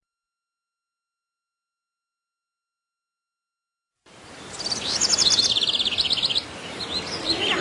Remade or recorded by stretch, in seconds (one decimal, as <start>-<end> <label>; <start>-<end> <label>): 0.0-7.6 recorded